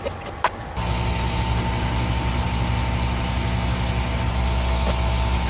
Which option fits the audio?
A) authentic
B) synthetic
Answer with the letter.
A